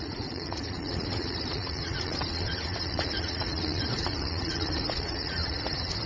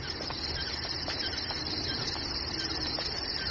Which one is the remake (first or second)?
first